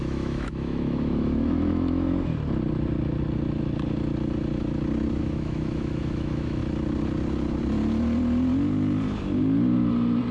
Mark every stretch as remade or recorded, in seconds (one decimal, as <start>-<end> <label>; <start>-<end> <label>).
0.0-2.3 remade; 2.3-5.2 recorded; 5.2-6.6 remade; 6.6-10.3 recorded